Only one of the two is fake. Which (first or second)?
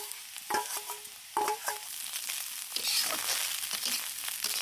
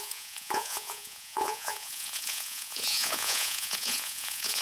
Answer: second